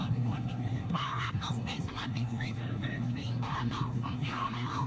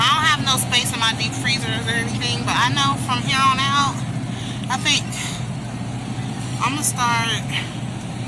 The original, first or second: second